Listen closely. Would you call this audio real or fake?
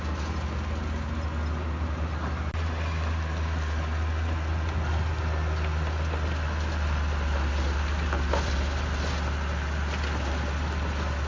real